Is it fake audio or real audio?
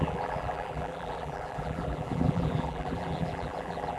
fake